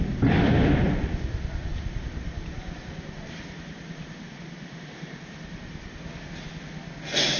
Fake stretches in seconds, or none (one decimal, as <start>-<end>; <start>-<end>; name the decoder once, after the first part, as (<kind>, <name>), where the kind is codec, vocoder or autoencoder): 1.7-6.1 (vocoder, BigVGAN v2)